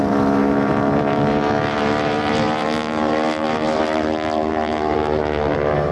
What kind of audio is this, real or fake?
fake